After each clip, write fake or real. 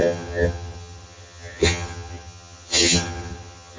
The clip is fake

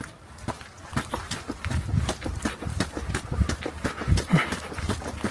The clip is real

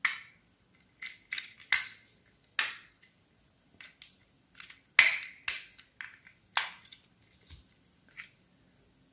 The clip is real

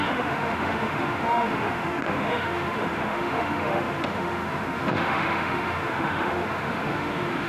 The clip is fake